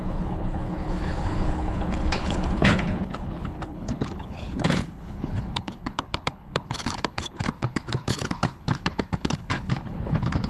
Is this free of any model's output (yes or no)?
no